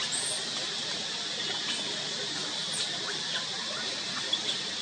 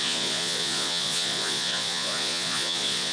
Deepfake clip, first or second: second